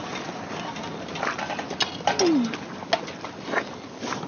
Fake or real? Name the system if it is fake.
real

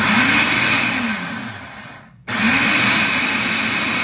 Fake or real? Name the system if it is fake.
real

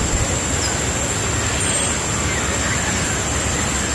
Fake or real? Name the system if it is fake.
real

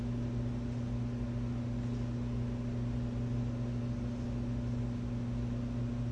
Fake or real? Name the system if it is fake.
real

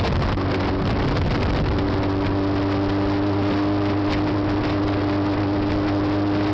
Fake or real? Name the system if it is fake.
real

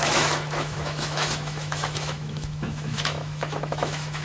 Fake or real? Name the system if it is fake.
fake, autoencoder, DAC-VAE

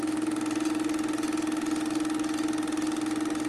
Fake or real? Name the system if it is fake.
real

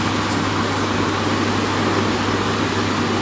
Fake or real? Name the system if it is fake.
real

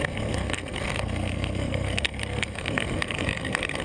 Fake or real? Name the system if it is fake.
fake, codec, SNAC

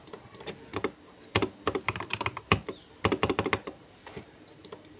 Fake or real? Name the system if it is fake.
fake, vocoder, BigVGAN v2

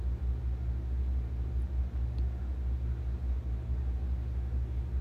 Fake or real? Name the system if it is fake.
real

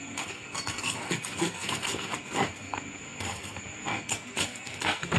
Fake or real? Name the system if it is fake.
fake, codec, SNAC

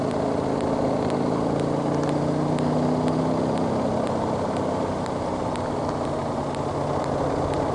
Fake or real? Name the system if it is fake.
real